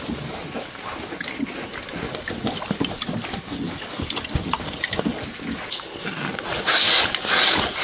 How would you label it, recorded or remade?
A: recorded